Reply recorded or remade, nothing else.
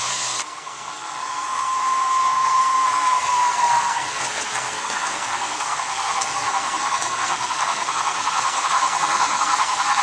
remade